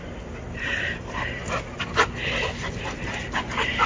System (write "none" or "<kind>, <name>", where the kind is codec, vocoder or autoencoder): none